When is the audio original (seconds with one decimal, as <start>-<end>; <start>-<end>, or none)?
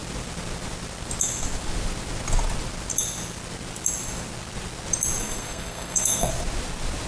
0.0-5.2; 6.3-7.1